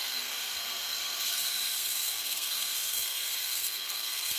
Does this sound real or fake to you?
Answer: fake